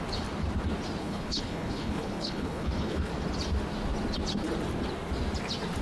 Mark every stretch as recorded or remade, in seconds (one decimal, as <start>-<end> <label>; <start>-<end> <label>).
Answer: 0.0-1.0 recorded; 1.0-3.1 remade; 3.1-5.8 recorded